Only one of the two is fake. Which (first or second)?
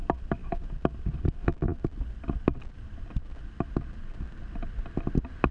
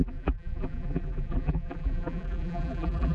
second